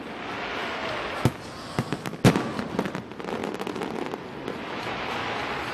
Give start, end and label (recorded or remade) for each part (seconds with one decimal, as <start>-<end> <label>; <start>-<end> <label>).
0.0-5.7 recorded